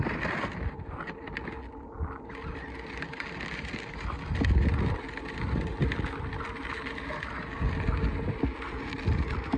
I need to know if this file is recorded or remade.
recorded